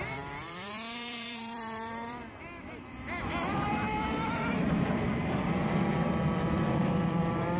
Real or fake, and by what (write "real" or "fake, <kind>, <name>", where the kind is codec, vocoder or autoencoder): fake, vocoder, BigVGAN v2